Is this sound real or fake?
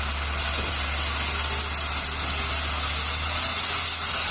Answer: real